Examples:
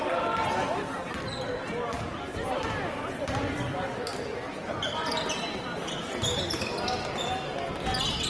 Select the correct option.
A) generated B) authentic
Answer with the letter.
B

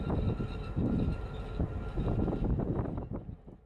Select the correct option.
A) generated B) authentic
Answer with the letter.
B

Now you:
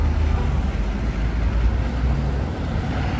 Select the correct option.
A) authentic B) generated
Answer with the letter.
A